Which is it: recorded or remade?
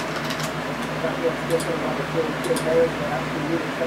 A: recorded